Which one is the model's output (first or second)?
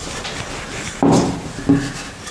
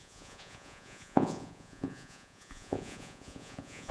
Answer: second